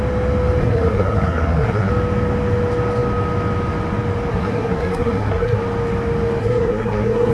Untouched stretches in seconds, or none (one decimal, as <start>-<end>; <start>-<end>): 0.0-0.6; 1.9-4.3; 5.6-6.4